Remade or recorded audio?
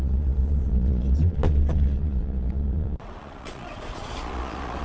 remade